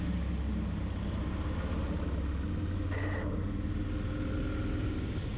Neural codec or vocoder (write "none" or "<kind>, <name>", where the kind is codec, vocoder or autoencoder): none